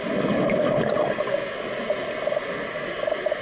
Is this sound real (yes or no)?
yes